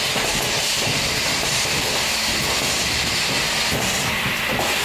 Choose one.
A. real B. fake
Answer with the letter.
B